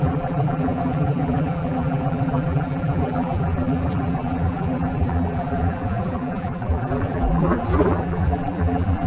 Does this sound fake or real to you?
fake